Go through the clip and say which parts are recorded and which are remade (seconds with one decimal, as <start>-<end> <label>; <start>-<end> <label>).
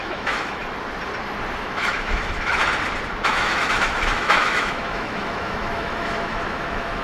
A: 0.0-0.6 remade; 0.6-1.6 recorded; 1.6-2.6 remade; 2.6-3.3 recorded; 3.3-7.0 remade